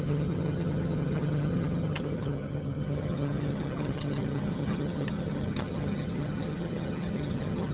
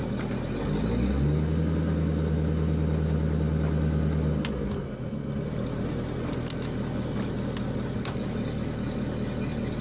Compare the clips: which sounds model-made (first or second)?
first